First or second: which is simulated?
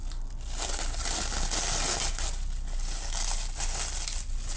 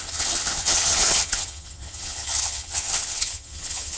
second